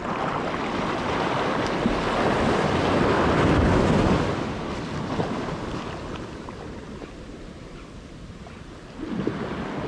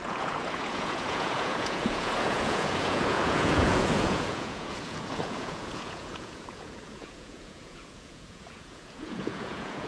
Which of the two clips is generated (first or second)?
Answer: second